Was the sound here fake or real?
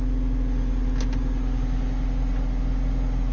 real